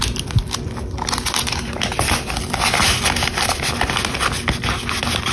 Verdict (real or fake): real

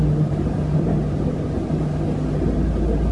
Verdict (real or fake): real